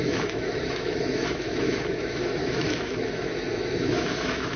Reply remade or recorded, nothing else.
remade